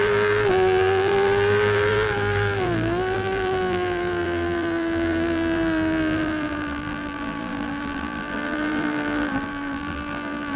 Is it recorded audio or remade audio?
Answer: remade